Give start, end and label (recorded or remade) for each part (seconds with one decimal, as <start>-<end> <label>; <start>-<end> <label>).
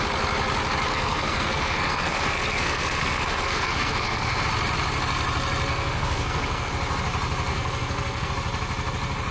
0.0-0.9 recorded; 0.9-4.4 remade; 4.4-5.7 recorded; 5.7-6.7 remade; 6.7-7.5 recorded; 7.5-8.3 remade; 8.3-9.3 recorded